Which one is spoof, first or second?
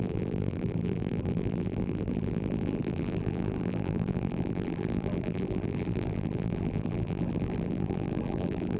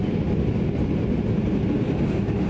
first